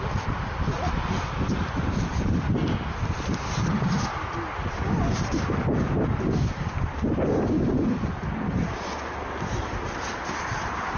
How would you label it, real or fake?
real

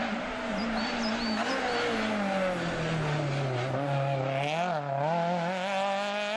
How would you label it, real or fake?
real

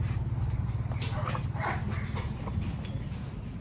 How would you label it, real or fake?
real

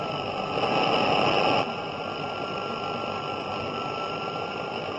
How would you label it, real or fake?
real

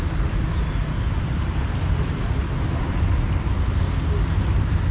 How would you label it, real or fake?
real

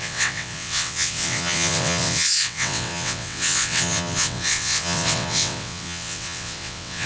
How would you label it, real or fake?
fake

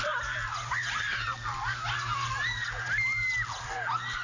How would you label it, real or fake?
real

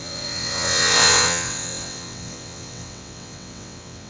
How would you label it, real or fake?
fake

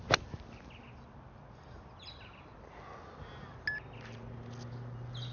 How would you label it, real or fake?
real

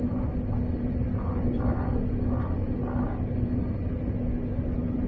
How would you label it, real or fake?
real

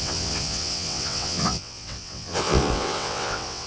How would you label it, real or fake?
fake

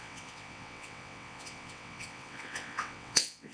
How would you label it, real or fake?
fake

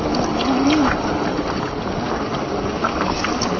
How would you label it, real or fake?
real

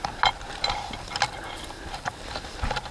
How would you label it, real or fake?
real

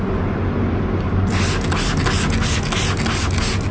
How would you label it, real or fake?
real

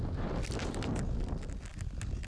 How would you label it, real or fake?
real